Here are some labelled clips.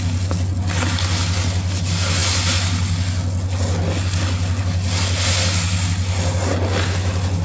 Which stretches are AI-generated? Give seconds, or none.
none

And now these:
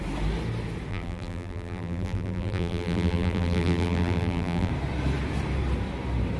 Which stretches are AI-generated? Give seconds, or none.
0.9-4.7 (vocoder, BigVGAN v2)